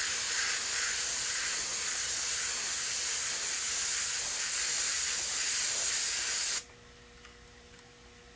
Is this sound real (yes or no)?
yes